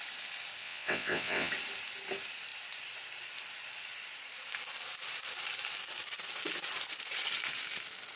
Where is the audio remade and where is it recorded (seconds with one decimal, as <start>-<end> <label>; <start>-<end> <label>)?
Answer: 0.0-0.6 recorded; 0.6-1.5 remade; 1.5-8.2 recorded